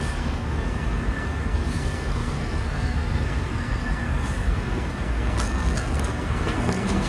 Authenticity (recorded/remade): remade